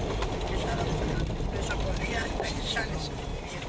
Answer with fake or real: real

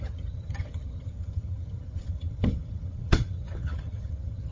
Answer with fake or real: fake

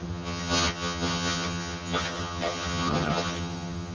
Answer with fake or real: fake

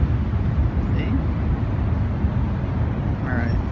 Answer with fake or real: real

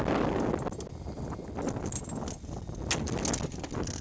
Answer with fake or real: real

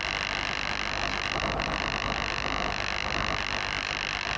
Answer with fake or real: real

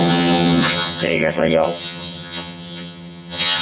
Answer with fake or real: fake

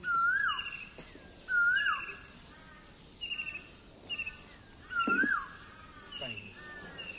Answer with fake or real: real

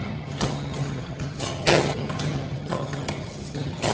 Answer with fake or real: fake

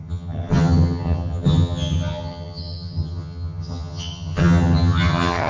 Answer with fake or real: fake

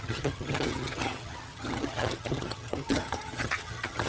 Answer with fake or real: fake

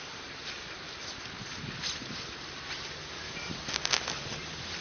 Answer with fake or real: real